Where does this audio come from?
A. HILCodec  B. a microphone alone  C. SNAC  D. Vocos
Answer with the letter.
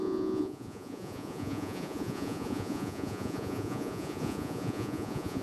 D